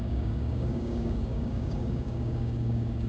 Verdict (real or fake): fake